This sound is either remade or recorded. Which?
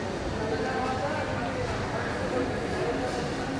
recorded